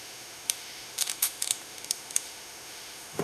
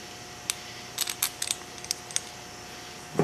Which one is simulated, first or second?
first